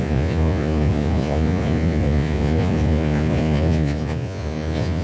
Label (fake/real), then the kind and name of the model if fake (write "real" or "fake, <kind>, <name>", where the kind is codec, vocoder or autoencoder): fake, vocoder, Vocos